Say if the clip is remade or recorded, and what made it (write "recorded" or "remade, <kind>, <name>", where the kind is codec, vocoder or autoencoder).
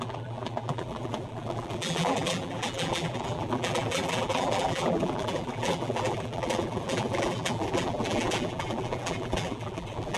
remade, vocoder, BigVGAN v2